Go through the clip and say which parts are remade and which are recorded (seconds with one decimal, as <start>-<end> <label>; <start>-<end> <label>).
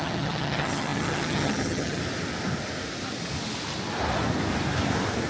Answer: 0.0-2.0 remade; 2.0-5.3 recorded